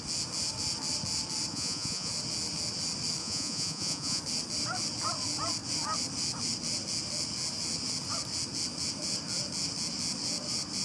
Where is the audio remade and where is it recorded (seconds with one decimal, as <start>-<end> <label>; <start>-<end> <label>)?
0.0-1.5 recorded; 1.5-2.1 remade; 2.1-3.2 recorded; 3.2-4.2 remade; 4.2-10.8 recorded